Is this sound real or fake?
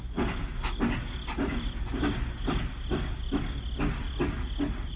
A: real